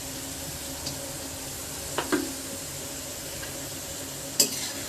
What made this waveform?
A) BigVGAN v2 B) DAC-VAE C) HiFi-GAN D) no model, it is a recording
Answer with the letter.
A